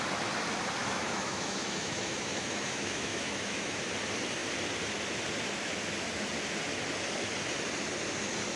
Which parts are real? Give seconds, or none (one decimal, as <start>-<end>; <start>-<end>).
0.0-0.8; 3.8-8.6